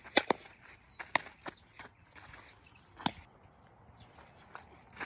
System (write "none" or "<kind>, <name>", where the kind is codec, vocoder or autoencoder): none